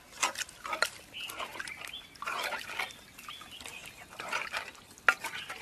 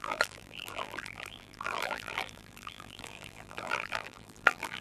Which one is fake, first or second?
second